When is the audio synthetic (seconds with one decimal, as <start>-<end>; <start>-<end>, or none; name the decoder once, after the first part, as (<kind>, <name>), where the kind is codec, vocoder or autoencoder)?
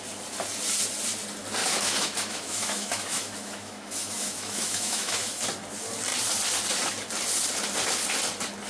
1.6-5.4 (autoencoder, DAC-VAE)